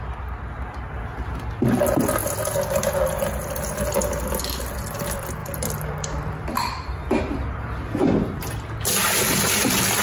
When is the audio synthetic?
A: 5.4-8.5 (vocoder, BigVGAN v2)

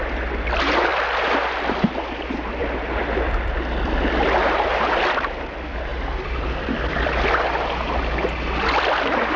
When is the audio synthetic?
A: 0.9-1.6 (vocoder, BigVGAN v2); 5.9-9.0